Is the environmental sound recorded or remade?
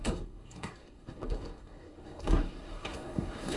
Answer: remade